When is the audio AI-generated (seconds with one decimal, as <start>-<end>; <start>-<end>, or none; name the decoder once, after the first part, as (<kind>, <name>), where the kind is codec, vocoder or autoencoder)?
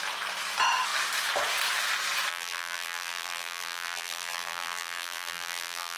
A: 2.3-6.0 (vocoder, BigVGAN v2)